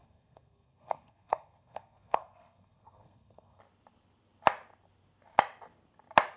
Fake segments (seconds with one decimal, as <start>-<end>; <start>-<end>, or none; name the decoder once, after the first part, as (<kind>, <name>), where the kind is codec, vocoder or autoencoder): 0.0-3.6 (codec, SNAC)